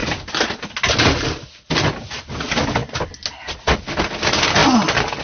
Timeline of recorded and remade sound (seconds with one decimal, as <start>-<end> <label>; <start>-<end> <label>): 0.0-5.2 recorded